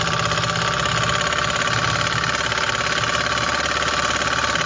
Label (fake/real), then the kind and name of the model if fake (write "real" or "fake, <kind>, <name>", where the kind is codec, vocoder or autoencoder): real